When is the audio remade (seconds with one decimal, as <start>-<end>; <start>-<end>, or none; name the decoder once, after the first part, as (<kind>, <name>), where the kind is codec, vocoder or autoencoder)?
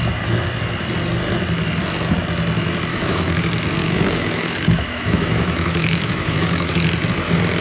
2.9-3.4 (autoencoder, DAC-VAE); 3.8-6.7